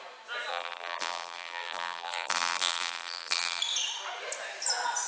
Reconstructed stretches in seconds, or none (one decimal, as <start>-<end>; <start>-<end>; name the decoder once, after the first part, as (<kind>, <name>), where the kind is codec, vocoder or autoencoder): 0.5-3.6 (vocoder, BigVGAN v2)